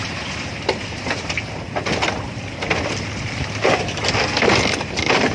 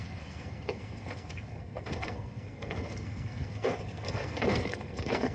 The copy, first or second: second